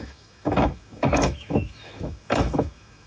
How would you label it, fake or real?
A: fake